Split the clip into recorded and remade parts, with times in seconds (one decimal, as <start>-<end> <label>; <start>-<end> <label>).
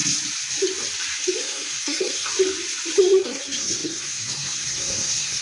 0.0-1.4 recorded; 1.4-2.3 remade; 2.3-3.2 recorded; 3.2-5.4 remade